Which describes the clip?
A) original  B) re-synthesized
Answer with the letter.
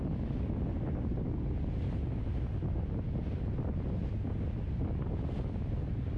A